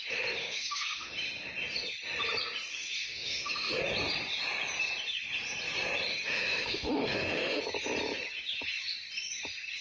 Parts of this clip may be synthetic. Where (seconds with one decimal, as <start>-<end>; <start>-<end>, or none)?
0.4-1.1; 2.7-3.8; 6.1-7.6